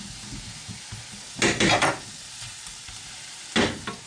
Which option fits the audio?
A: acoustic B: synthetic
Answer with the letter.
A